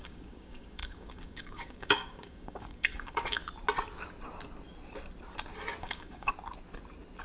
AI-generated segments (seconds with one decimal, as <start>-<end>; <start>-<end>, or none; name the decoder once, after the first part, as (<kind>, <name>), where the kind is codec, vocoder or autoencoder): 0.0-3.4 (codec, DAC); 5.8-6.3